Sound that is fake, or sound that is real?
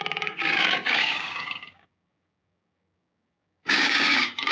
fake